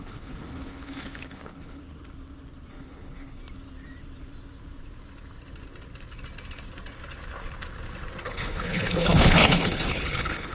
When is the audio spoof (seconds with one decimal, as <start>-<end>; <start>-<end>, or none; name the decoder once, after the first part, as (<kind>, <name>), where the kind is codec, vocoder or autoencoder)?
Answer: 0.0-1.8 (codec, HILCodec); 2.7-3.4; 8.2-10.5